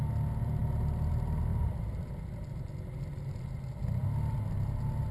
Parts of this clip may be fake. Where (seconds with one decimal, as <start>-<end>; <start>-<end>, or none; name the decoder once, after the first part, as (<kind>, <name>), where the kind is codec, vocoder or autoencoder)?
1.5-2.0 (vocoder, BigVGAN v2)